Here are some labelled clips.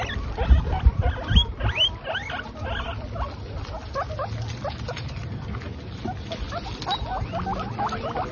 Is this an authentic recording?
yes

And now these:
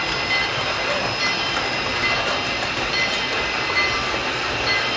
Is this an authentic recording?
yes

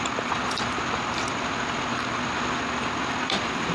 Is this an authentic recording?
yes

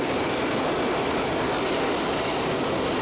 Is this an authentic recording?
yes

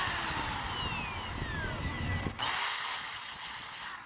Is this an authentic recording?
yes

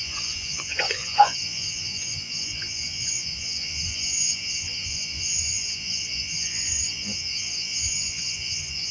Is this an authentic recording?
no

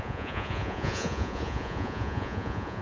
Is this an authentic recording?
no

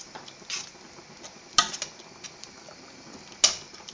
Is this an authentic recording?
yes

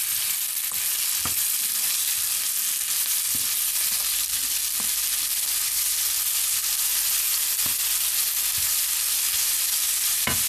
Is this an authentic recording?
yes